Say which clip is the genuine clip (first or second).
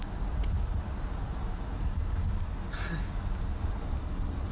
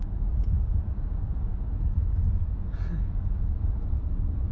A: first